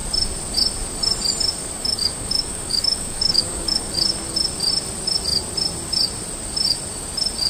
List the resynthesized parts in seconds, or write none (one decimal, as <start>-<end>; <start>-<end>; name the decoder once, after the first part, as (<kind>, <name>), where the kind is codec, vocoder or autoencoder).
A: 1.6-3.9 (codec, DAC)